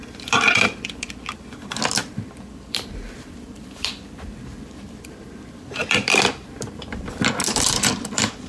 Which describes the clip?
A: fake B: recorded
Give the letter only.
A